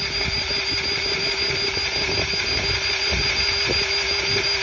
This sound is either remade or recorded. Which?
recorded